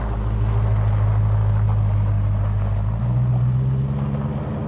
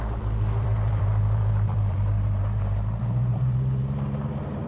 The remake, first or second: second